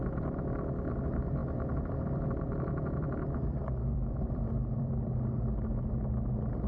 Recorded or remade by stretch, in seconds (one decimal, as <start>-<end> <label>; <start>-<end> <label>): 0.0-1.4 recorded; 1.4-5.4 remade; 5.4-6.7 recorded